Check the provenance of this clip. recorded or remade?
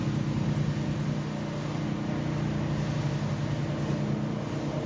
recorded